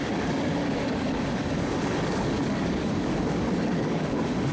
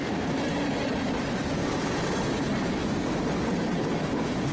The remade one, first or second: first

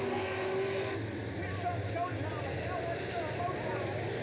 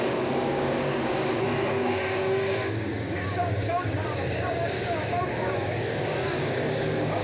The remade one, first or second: second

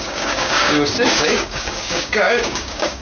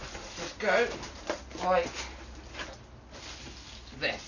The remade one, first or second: first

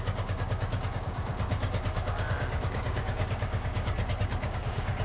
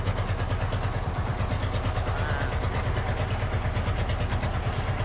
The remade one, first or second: first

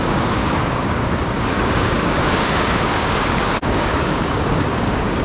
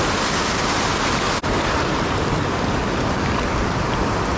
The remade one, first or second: first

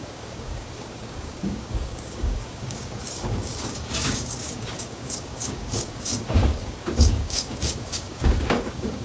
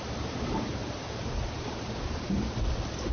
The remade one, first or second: first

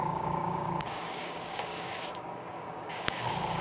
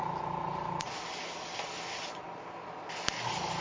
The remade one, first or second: first